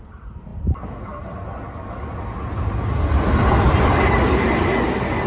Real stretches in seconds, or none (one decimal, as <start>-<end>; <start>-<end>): 0.0-5.3